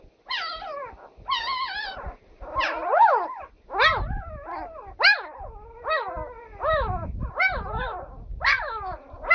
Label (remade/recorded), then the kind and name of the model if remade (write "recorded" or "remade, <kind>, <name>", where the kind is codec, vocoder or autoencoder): recorded